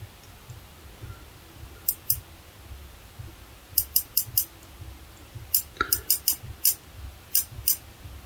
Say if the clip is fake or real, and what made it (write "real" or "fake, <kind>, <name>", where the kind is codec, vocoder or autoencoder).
real